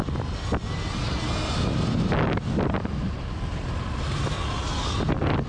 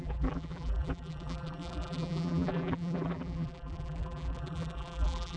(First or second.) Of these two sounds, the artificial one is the second